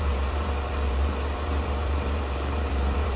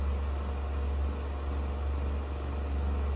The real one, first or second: second